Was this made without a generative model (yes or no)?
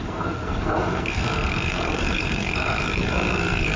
no